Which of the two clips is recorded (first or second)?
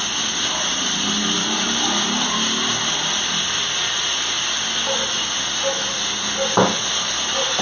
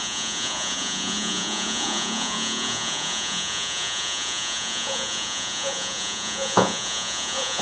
first